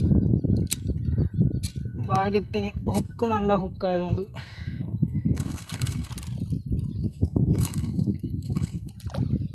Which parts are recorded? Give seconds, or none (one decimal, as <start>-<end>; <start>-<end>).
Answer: 0.0-1.9; 6.1-7.0; 8.9-9.5